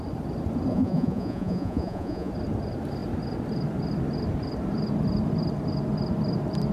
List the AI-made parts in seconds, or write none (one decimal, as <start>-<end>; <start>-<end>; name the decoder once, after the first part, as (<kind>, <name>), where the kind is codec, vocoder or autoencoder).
0.7-2.3 (vocoder, Vocos)